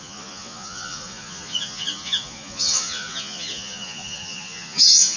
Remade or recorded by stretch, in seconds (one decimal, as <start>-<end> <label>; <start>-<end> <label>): 0.0-5.2 remade